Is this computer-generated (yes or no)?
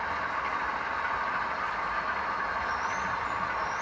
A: no